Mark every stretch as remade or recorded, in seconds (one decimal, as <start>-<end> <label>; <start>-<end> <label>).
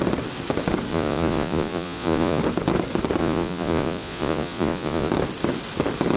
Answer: 0.0-0.9 recorded; 0.9-2.4 remade; 2.4-3.2 recorded; 3.2-5.1 remade; 5.1-6.2 recorded